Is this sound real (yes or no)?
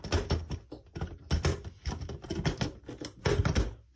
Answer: yes